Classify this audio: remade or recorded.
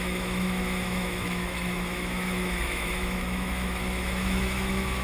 remade